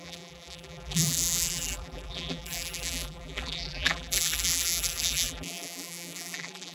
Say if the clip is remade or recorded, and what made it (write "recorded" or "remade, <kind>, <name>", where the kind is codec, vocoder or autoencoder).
remade, vocoder, BigVGAN v2